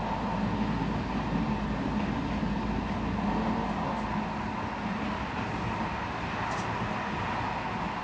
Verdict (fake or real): real